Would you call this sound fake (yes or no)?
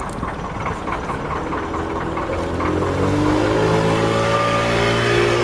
no